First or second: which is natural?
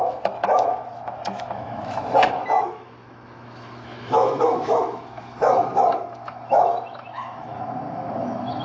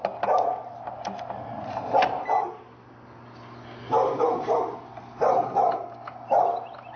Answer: second